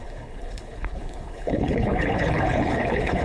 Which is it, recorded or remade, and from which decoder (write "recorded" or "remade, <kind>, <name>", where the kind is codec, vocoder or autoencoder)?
remade, codec, HILCodec